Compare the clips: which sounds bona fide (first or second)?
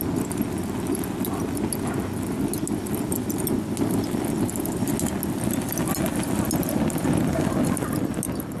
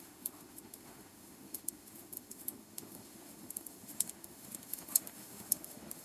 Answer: first